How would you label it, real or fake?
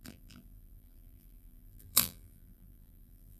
fake